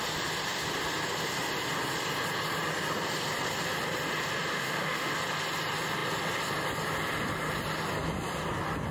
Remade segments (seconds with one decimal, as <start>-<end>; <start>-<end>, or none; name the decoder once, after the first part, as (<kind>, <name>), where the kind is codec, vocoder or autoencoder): 4.5-5.1 (autoencoder, DAC-VAE)